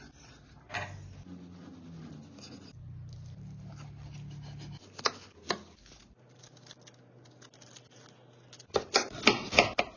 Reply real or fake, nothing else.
real